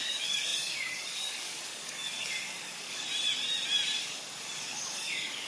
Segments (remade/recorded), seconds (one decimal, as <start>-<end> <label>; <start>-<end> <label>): 0.0-3.1 remade; 3.1-4.0 recorded; 4.0-5.5 remade